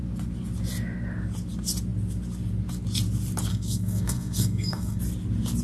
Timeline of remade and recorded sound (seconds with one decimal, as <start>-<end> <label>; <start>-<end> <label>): 0.0-3.5 recorded; 3.5-5.0 remade; 5.0-5.6 recorded